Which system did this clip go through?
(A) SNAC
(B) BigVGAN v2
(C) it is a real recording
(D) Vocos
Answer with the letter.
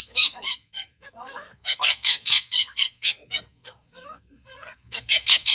A